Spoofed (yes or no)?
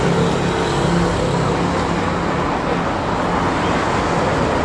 no